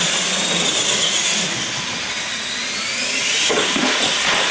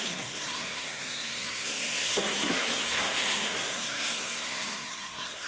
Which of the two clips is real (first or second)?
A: first